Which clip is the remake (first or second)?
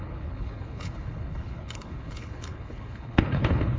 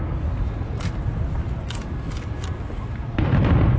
first